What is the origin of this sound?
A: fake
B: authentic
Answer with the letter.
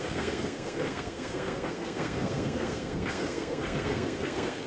A